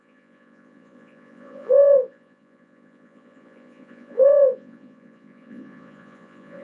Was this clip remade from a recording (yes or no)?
yes